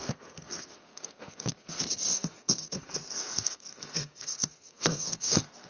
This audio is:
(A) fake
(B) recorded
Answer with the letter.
A